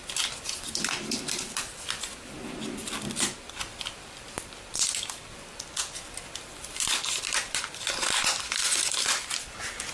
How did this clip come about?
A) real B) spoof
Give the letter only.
B